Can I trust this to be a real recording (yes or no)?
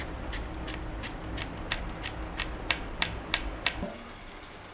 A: yes